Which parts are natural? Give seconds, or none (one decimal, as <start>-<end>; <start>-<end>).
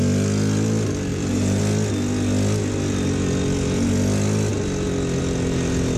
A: 0.0-1.1; 1.6-6.0